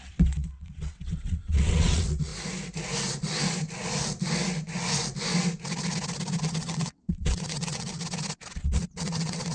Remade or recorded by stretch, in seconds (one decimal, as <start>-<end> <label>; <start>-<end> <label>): 0.0-2.3 remade; 2.3-6.4 recorded; 6.4-7.9 remade; 7.9-8.5 recorded; 8.5-9.5 remade